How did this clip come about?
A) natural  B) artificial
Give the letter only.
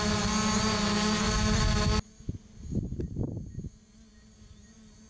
A